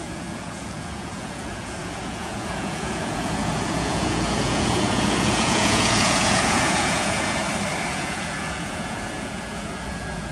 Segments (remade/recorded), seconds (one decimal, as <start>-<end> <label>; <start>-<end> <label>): 0.0-7.4 remade; 7.4-7.9 recorded; 7.9-10.3 remade